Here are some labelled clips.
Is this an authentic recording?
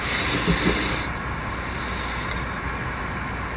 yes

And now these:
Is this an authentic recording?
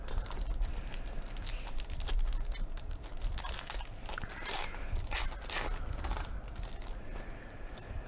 yes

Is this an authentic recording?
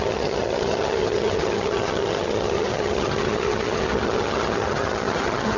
no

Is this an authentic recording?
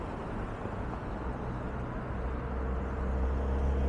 yes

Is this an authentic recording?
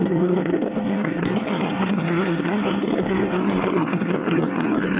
no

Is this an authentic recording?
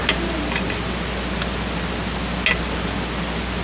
yes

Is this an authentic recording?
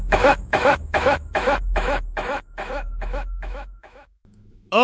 no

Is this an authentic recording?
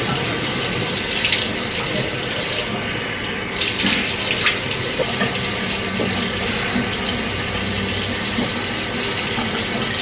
yes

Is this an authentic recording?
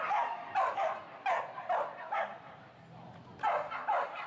yes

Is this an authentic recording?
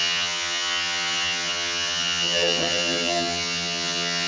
no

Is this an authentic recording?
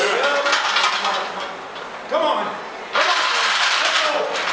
yes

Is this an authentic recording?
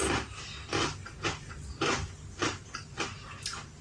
yes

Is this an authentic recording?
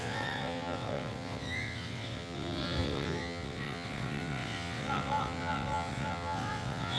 no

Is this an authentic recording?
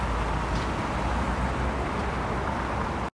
yes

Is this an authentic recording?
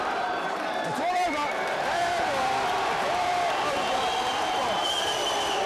no